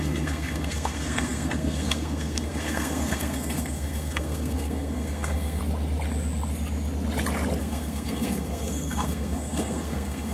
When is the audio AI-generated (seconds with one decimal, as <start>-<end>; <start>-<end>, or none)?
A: 0.0-5.6; 7.6-10.3